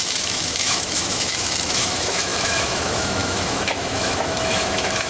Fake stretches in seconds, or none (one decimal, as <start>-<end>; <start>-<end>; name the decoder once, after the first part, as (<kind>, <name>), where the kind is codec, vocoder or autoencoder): 0.0-5.1 (autoencoder, DAC-VAE)